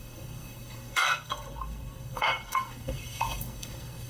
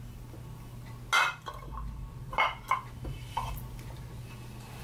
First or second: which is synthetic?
first